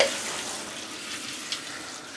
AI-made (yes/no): no